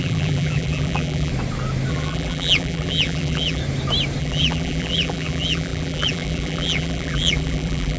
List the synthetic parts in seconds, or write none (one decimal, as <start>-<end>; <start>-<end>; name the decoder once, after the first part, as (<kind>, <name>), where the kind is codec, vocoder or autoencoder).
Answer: 0.0-1.3 (vocoder, BigVGAN v2); 1.9-3.6; 4.2-8.0